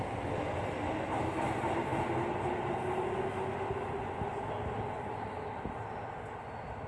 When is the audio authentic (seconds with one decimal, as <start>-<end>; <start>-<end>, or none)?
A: 0.0-6.9